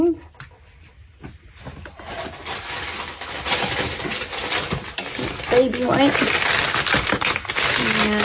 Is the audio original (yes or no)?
yes